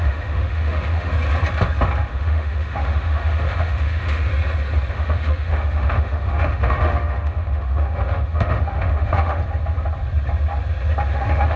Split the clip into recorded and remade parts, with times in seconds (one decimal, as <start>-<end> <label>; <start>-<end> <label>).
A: 0.0-1.1 remade; 1.1-2.1 recorded; 2.1-4.3 remade; 4.3-4.9 recorded; 4.9-9.4 remade; 9.4-11.1 recorded; 11.1-11.6 remade